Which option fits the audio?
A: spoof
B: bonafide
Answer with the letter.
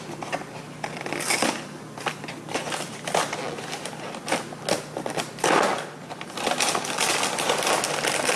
B